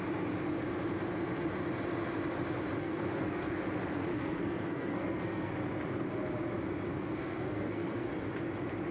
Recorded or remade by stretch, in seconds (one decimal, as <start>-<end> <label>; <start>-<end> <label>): 0.0-2.8 recorded; 2.8-3.6 remade; 3.6-4.1 recorded; 4.1-5.5 remade; 5.5-6.9 recorded; 6.9-8.1 remade; 8.1-8.9 recorded